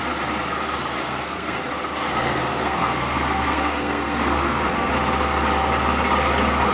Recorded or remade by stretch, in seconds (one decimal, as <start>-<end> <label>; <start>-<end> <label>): 0.0-1.0 recorded; 1.0-1.6 remade; 1.6-2.1 recorded; 2.1-4.9 remade; 4.9-6.7 recorded

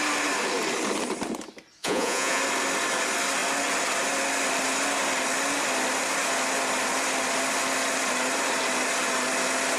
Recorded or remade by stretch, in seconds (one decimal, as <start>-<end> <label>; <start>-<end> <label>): 0.0-1.8 recorded; 1.8-2.4 remade; 2.4-9.8 recorded